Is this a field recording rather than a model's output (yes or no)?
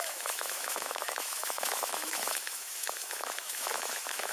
no